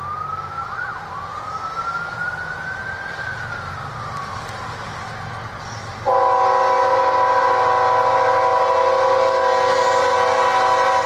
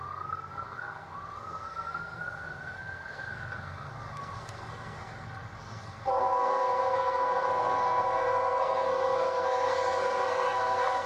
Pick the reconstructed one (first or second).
second